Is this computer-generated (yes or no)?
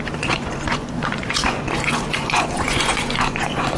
yes